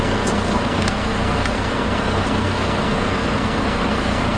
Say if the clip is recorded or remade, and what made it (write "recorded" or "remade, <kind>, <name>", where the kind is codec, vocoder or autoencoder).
remade, codec, SNAC